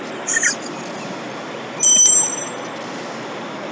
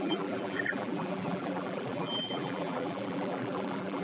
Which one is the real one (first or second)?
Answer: first